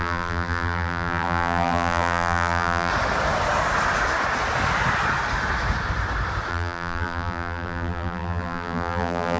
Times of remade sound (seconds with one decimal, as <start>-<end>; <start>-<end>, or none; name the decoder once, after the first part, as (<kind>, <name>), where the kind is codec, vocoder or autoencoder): 0.0-2.9 (vocoder, BigVGAN v2); 6.5-9.4